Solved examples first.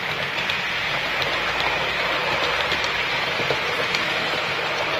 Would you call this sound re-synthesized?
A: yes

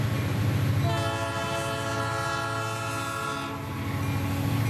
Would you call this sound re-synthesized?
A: no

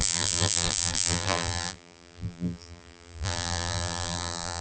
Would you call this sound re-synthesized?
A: yes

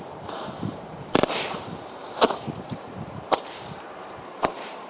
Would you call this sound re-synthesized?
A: yes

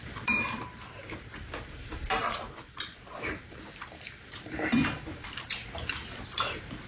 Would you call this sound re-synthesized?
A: yes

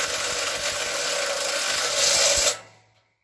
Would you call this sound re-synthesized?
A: no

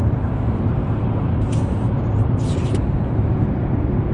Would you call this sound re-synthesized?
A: yes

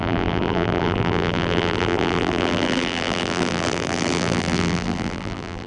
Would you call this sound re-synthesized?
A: yes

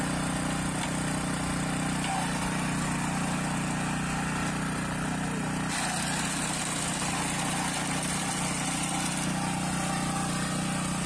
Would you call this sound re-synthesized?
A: no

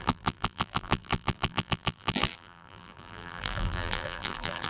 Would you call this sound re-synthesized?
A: yes